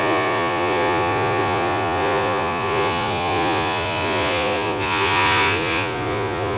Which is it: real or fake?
fake